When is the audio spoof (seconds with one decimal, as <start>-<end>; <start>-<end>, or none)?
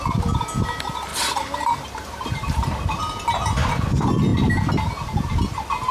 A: 1.1-3.0